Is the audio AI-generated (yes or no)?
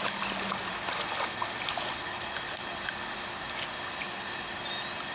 no